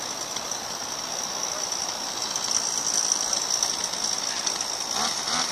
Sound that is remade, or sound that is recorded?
recorded